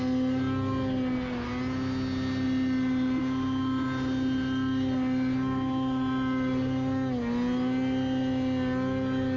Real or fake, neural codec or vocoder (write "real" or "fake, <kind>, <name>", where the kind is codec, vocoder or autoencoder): real